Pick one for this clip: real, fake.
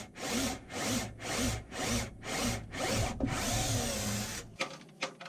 real